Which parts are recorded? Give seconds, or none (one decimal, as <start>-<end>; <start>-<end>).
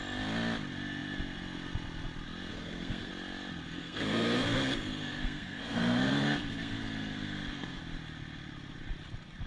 0.0-2.5; 3.1-3.8; 7.8-9.5